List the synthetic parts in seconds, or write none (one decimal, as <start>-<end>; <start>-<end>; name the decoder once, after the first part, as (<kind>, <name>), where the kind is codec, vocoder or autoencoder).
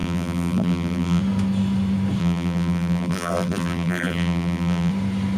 0.0-1.2 (vocoder, BigVGAN v2); 2.2-4.9